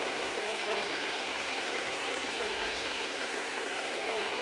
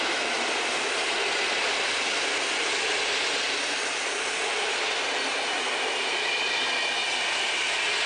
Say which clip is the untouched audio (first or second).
second